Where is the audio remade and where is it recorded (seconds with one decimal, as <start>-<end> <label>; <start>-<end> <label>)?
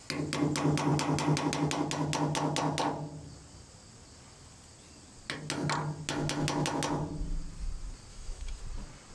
0.0-8.1 recorded; 8.1-8.6 remade; 8.6-9.1 recorded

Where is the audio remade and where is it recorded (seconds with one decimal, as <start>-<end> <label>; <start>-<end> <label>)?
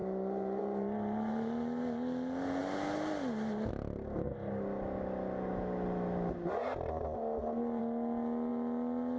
0.0-9.2 recorded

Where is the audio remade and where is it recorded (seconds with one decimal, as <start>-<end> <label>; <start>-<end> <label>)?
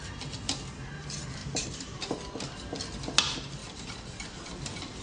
0.0-1.4 recorded; 1.4-2.0 remade; 2.0-3.6 recorded; 3.6-4.4 remade; 4.4-5.0 recorded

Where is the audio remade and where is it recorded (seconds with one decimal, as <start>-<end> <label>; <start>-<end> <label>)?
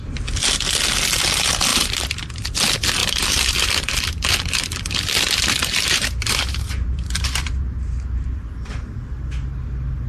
0.0-1.7 recorded; 1.7-2.5 remade; 2.5-3.0 recorded; 3.0-4.1 remade; 4.1-5.6 recorded; 5.6-8.5 remade; 8.5-10.1 recorded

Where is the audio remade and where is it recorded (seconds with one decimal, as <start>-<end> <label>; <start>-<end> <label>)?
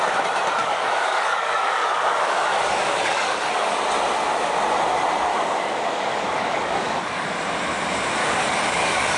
0.0-0.6 recorded; 0.6-3.7 remade; 3.7-5.3 recorded; 5.3-7.3 remade; 7.3-8.2 recorded; 8.2-9.2 remade